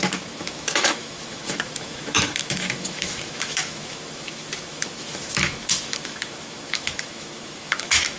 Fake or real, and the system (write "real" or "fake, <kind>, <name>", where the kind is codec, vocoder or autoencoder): fake, autoencoder, DAC-VAE